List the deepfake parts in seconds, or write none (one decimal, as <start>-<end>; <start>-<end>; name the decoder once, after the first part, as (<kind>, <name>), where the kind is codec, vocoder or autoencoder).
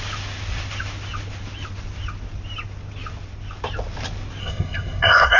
4.4-5.4 (codec, SNAC)